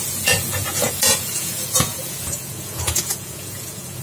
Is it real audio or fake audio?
fake